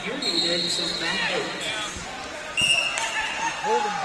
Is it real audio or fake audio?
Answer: real